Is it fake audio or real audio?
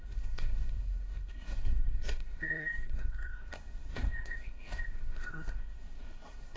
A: fake